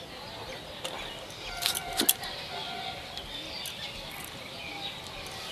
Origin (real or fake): real